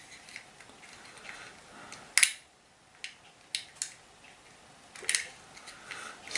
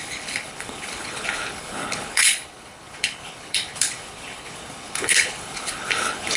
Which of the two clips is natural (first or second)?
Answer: first